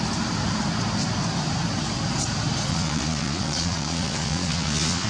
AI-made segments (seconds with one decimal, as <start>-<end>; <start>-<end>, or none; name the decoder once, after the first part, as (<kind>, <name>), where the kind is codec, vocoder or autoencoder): 2.7-5.1 (vocoder, Vocos)